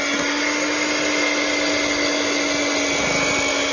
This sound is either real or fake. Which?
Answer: real